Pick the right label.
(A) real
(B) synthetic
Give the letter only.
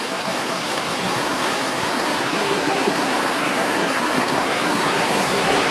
B